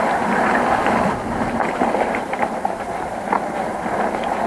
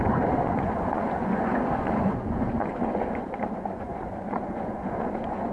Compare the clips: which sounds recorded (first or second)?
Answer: first